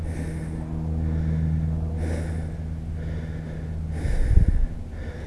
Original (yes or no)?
yes